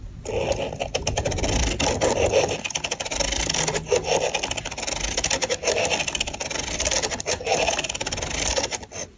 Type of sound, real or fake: real